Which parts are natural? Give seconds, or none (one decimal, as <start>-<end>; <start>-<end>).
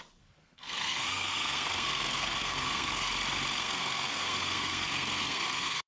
0.0-0.4; 3.1-3.5